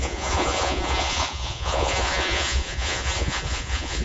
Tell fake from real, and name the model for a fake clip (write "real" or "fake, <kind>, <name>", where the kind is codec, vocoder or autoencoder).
fake, vocoder, Vocos